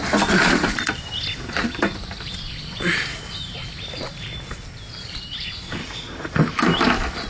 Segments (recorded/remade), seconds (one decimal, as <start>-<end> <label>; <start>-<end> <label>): 0.0-5.8 recorded; 5.8-6.6 remade; 6.6-7.3 recorded